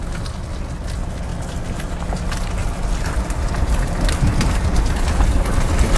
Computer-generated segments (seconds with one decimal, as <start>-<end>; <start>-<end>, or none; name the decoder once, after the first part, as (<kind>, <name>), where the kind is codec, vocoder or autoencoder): 2.6-4.1 (vocoder, BigVGAN v2)